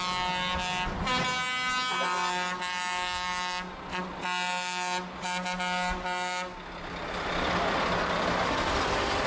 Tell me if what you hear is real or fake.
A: real